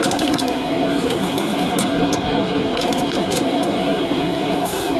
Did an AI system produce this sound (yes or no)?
yes